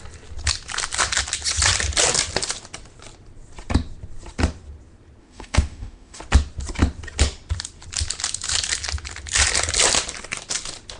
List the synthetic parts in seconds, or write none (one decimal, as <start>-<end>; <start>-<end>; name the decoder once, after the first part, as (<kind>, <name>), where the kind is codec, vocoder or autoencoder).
5.2-6.2 (autoencoder, DAC-VAE)